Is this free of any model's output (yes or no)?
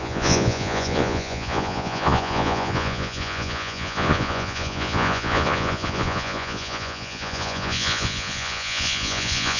no